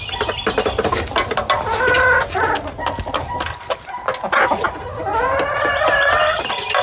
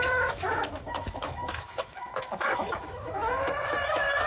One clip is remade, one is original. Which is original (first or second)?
first